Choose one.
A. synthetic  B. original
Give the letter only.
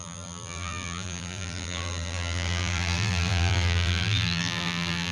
A